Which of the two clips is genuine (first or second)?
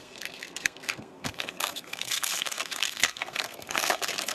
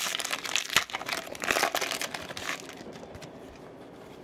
second